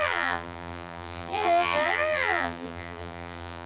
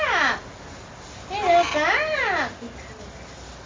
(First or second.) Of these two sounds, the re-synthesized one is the first